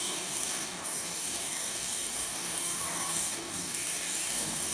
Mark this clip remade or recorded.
remade